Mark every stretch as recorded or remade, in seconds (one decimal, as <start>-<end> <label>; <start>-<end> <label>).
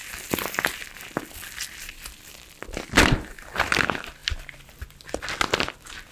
0.0-6.1 recorded